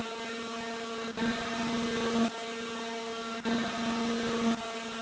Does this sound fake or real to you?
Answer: real